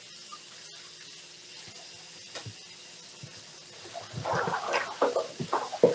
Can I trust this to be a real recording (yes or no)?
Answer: yes